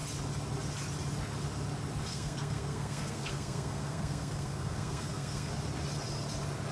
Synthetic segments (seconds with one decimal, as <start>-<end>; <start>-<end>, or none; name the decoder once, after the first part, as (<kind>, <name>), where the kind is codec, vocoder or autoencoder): 2.1-5.5 (codec, SNAC)